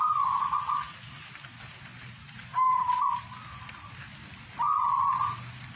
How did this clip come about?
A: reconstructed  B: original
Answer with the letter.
B